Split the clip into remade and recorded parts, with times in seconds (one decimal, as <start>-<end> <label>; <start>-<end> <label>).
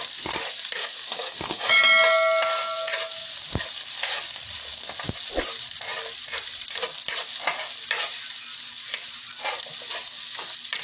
0.0-0.8 recorded; 0.8-1.8 remade; 1.8-10.8 recorded